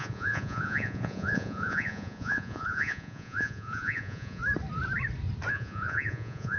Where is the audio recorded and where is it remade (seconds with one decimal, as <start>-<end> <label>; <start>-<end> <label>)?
0.0-4.4 remade; 4.4-5.5 recorded; 5.5-6.6 remade

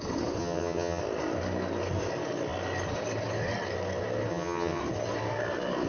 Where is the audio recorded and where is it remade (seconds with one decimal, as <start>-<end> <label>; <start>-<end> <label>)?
0.0-0.4 recorded; 0.4-1.0 remade; 1.0-4.3 recorded; 4.3-4.8 remade; 4.8-5.9 recorded

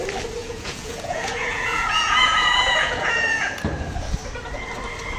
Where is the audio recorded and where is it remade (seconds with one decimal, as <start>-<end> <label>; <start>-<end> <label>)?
0.0-0.4 recorded; 0.4-3.5 remade; 3.5-5.2 recorded

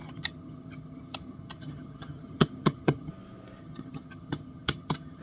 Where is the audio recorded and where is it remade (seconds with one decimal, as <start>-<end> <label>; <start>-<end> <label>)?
0.0-3.1 remade; 3.1-3.6 recorded; 3.6-5.2 remade

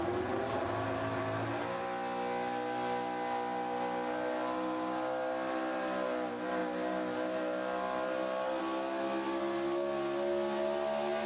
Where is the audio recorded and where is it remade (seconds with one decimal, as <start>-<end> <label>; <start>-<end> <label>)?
0.0-11.3 recorded

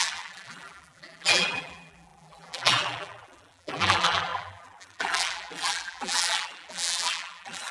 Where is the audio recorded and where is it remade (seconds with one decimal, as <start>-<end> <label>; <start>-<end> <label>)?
0.0-7.7 remade

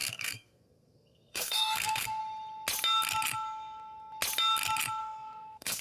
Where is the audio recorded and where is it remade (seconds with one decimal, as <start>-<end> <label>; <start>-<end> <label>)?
0.0-2.2 remade; 2.2-5.0 recorded; 5.0-5.8 remade